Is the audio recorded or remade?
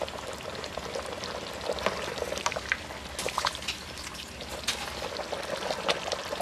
recorded